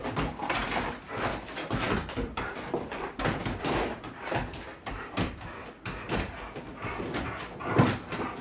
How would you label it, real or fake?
fake